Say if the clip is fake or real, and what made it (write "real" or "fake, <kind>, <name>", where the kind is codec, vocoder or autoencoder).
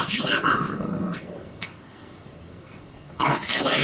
fake, codec, SNAC